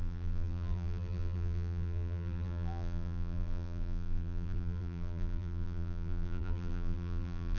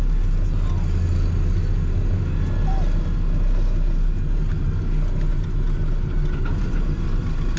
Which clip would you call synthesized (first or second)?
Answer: first